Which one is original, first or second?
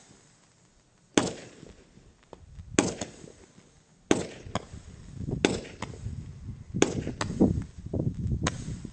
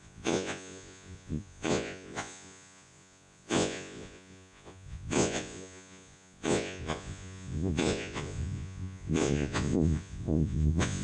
first